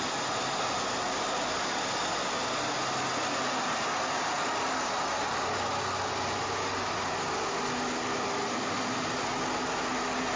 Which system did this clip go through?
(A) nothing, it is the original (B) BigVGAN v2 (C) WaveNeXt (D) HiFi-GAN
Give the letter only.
A